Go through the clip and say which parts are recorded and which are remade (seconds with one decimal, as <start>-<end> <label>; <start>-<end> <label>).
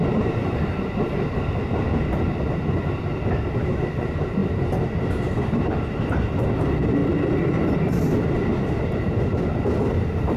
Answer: 0.0-0.4 remade; 0.4-3.7 recorded; 3.7-4.4 remade; 4.4-5.1 recorded; 5.1-7.0 remade; 7.0-9.8 recorded; 9.8-10.4 remade